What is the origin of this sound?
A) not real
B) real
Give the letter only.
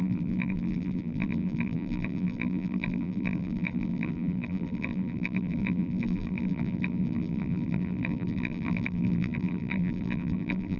A